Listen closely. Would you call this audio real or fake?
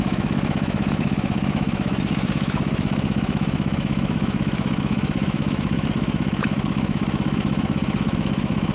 fake